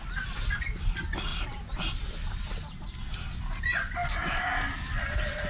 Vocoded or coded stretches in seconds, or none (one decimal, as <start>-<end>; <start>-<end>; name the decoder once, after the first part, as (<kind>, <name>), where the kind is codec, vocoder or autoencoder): 1.3-3.6 (vocoder, BigVGAN v2); 4.0-5.0